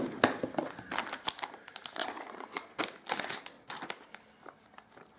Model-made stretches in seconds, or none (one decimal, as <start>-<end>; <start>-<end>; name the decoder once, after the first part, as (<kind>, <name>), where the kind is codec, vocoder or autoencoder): 2.0-2.8 (vocoder, Vocos)